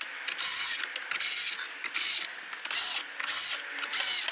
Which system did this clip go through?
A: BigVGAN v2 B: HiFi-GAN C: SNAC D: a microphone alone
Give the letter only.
D